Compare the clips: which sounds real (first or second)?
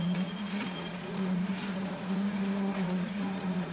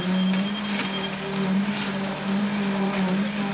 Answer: second